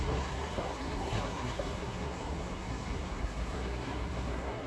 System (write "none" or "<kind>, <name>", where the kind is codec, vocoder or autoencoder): codec, SNAC